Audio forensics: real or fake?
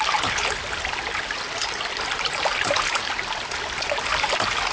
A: real